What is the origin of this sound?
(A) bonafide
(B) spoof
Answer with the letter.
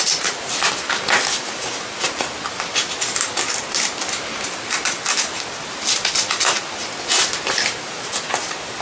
A